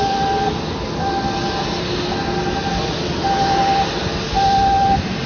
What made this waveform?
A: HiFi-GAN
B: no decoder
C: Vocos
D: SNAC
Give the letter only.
B